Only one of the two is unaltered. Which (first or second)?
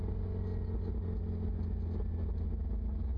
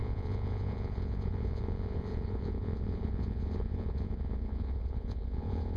first